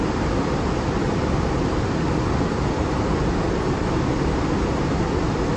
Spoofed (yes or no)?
no